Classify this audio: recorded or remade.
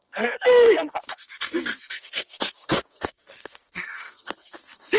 remade